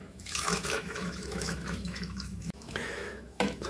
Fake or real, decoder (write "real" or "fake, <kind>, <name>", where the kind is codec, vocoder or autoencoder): fake, autoencoder, DAC-VAE